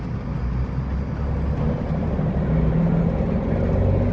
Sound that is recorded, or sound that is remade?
recorded